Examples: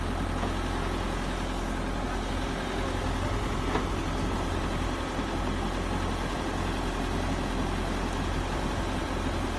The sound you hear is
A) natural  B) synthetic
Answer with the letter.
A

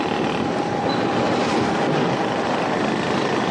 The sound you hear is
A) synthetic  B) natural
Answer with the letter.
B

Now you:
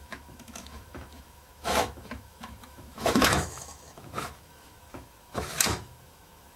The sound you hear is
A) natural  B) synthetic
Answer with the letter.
B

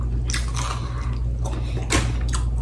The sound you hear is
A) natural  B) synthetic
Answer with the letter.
A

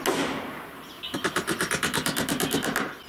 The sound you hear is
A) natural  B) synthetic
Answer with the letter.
A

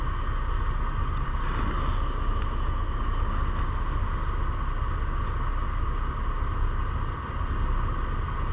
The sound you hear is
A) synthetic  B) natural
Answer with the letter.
B